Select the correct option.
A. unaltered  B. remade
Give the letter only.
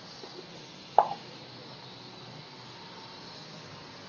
A